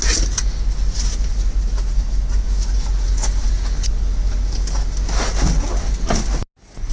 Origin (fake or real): real